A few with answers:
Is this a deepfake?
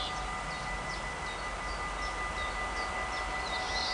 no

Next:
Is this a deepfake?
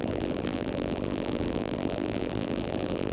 yes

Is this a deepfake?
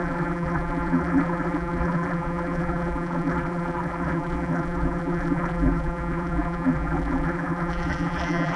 yes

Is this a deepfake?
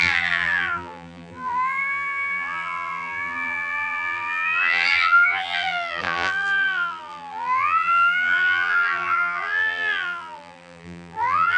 yes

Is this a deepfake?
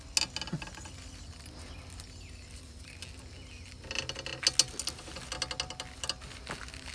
no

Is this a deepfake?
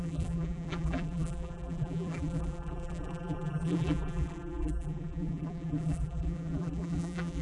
yes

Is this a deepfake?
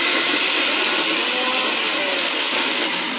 no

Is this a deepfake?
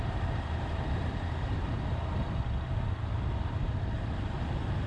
yes